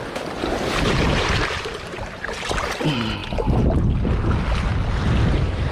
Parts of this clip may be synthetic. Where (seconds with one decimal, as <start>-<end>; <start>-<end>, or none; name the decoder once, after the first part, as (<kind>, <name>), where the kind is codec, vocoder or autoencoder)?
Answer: none